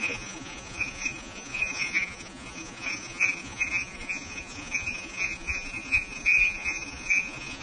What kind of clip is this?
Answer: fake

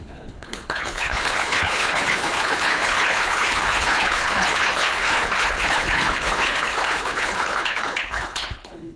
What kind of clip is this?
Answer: fake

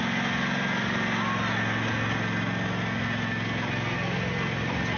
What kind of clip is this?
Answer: real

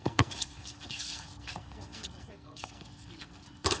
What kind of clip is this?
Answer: fake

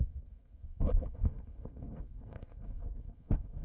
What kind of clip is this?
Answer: fake